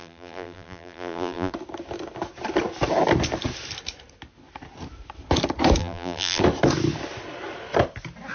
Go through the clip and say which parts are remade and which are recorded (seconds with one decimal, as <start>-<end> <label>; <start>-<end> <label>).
0.0-1.5 remade; 1.5-5.8 recorded; 5.8-6.4 remade; 6.4-8.3 recorded